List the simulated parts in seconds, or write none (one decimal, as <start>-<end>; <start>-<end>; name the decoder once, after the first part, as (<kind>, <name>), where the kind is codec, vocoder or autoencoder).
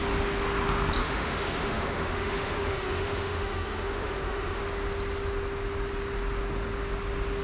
1.0-4.6 (autoencoder, DAC-VAE)